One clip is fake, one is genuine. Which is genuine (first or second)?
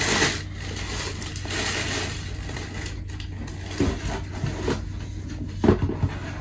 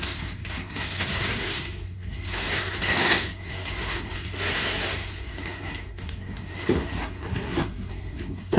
first